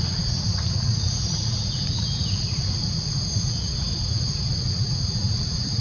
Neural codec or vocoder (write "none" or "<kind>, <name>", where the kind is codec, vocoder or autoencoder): vocoder, Vocos